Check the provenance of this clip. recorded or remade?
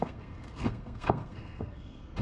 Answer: remade